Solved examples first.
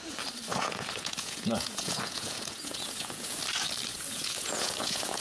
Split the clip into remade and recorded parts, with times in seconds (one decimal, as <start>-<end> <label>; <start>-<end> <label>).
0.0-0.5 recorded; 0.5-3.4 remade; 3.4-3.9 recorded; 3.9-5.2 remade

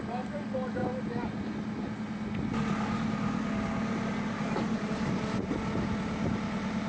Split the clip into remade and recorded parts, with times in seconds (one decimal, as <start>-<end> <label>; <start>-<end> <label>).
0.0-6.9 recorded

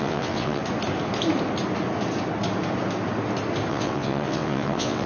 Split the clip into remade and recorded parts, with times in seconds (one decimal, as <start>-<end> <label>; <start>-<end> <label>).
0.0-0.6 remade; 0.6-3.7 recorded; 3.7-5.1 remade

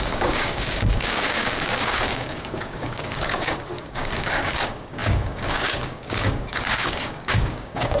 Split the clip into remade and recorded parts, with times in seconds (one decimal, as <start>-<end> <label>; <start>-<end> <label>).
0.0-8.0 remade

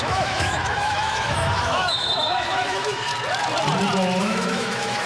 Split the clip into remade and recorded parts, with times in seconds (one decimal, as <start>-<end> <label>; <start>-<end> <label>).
0.0-3.1 remade; 3.1-4.2 recorded; 4.2-5.1 remade